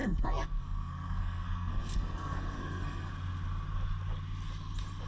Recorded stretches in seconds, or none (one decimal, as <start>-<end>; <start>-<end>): 3.1-5.1

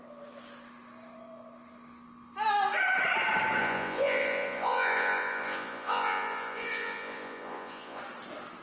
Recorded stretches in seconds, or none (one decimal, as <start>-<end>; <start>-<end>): 0.0-3.6; 8.0-8.6

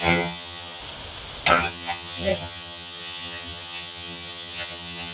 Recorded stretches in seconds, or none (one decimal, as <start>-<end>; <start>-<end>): 0.8-1.5

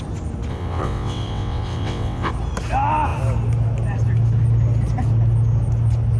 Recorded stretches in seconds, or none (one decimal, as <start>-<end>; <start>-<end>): 0.0-0.5; 2.3-6.2